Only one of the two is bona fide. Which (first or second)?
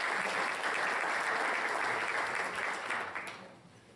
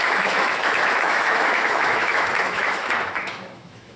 first